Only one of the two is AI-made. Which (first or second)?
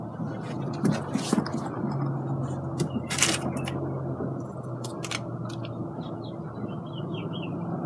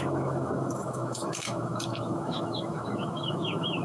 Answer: second